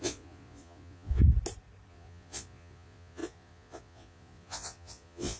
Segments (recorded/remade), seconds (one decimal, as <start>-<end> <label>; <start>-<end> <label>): 0.0-1.2 remade; 1.2-1.9 recorded; 1.9-5.4 remade